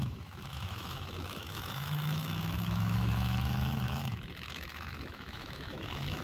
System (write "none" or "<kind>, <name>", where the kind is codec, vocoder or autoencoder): autoencoder, DAC-VAE